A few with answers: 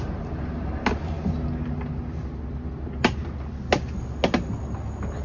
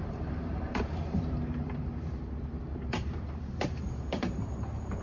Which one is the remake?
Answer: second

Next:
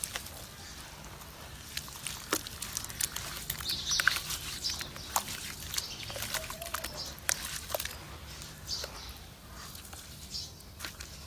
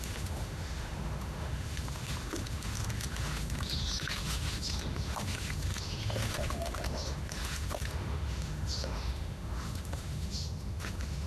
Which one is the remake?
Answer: second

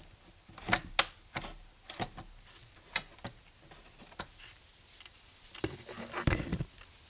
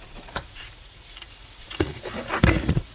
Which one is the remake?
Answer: second